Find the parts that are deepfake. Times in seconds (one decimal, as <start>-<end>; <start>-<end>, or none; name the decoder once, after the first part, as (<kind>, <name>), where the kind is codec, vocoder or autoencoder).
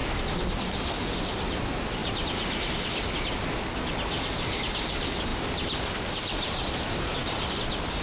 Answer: 0.0-2.0 (vocoder, BigVGAN v2); 4.8-8.0